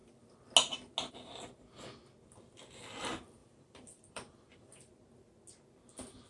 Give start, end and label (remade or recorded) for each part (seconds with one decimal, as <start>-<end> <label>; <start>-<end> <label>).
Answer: 0.0-3.4 recorded; 3.4-4.9 remade; 4.9-6.3 recorded